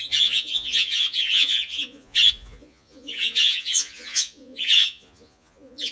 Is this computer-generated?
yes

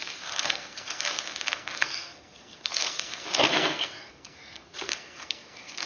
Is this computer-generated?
yes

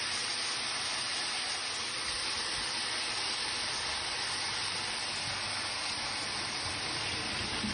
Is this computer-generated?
no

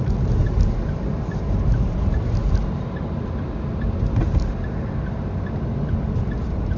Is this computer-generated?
no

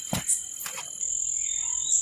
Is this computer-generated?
no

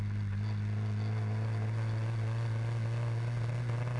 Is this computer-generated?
no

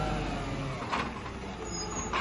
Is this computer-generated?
no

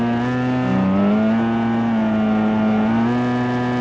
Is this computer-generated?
no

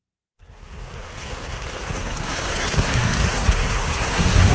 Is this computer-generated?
yes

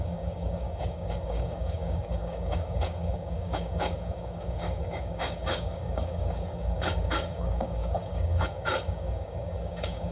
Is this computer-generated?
yes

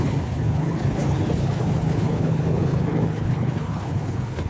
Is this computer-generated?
yes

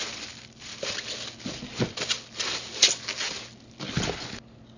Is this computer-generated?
no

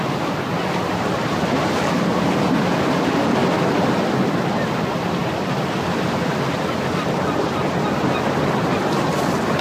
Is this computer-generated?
no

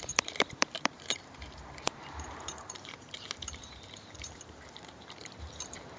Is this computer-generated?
yes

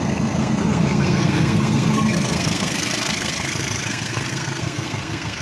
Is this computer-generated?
yes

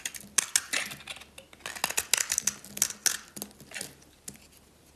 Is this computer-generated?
no